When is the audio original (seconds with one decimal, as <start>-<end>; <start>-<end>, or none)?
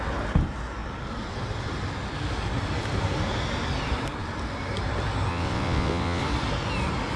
0.0-5.3; 6.2-7.2